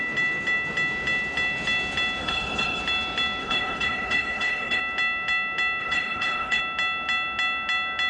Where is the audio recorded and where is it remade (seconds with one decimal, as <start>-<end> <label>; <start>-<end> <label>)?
0.0-2.2 recorded; 2.2-2.8 remade; 2.8-3.4 recorded; 3.4-4.8 remade; 4.8-5.8 recorded; 5.8-6.6 remade; 6.6-8.1 recorded